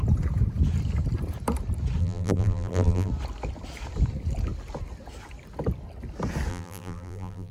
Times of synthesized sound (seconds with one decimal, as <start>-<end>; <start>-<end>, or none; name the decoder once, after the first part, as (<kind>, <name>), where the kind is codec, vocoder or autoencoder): 2.0-3.1 (vocoder, BigVGAN v2); 6.5-7.5